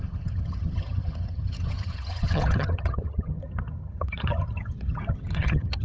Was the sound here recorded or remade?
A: remade